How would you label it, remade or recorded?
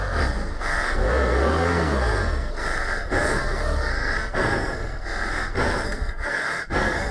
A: remade